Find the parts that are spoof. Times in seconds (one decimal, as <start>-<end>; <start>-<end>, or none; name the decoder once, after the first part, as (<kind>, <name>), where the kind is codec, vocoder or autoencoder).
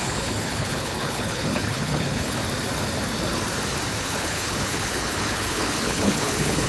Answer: 0.0-2.4 (codec, HILCodec); 4.0-6.7